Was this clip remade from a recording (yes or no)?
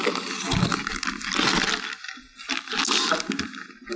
no